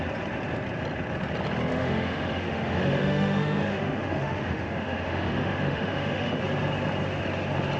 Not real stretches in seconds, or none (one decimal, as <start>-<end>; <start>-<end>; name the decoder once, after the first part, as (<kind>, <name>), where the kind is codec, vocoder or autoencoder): 1.7-6.4 (autoencoder, DAC-VAE)